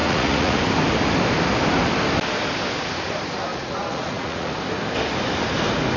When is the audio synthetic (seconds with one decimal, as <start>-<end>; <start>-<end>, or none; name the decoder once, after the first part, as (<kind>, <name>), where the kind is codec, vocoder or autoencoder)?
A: 0.0-0.6 (vocoder, Vocos); 3.5-4.5